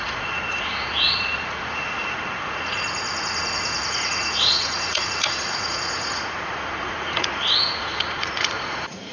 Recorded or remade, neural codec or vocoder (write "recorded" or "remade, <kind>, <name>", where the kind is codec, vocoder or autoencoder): remade, vocoder, Vocos